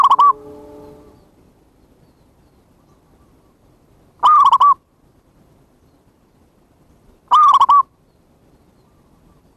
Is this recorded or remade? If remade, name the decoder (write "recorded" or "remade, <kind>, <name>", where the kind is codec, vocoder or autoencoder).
recorded